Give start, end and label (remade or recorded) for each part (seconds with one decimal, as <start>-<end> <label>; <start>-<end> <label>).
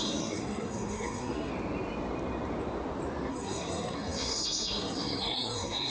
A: 0.0-1.5 remade; 1.5-3.3 recorded; 3.3-5.9 remade